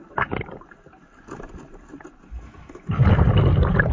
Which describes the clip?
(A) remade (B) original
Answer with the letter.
B